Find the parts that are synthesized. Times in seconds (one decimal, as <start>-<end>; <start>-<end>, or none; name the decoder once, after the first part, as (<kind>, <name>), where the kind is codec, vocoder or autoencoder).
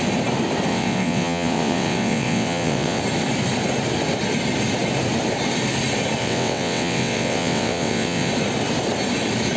0.7-3.0 (vocoder, WaveNeXt); 6.2-8.3